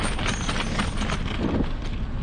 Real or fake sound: real